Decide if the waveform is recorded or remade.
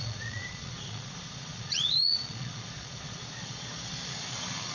remade